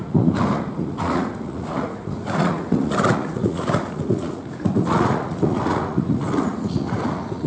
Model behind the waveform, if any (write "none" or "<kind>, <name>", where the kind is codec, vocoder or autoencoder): vocoder, Vocos